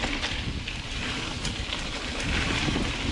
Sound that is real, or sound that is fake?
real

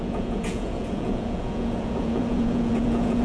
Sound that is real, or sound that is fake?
fake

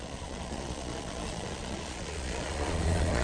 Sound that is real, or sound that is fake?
fake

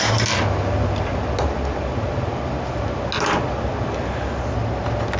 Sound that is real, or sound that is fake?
real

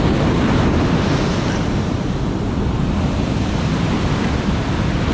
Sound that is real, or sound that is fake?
real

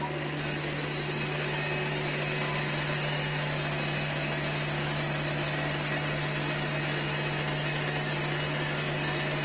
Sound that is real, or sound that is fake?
real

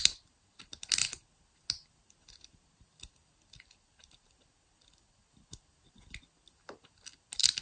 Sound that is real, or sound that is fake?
real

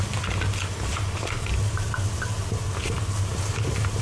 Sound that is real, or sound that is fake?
real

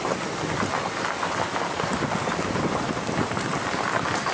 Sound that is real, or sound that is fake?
real